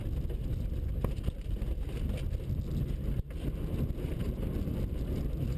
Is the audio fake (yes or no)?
no